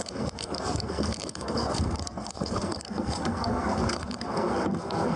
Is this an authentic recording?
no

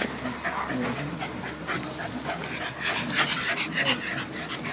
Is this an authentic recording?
yes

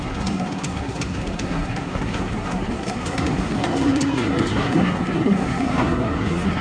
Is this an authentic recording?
no